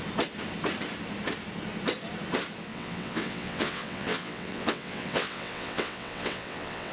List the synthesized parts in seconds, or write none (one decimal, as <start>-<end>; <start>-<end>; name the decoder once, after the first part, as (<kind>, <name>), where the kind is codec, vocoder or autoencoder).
2.7-6.9 (vocoder, WaveNeXt)